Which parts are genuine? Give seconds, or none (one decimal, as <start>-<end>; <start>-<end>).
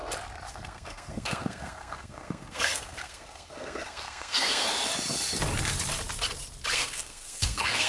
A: 0.0-0.5; 4.7-6.7